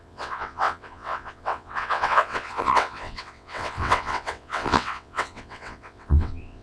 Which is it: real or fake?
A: fake